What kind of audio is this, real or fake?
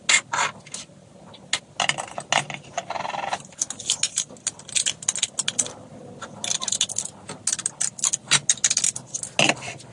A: real